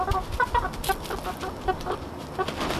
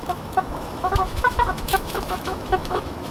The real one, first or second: first